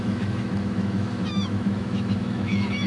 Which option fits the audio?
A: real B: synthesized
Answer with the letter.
B